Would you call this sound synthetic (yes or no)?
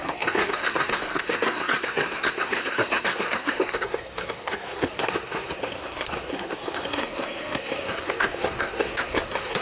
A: yes